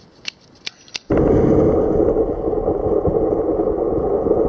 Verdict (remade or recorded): recorded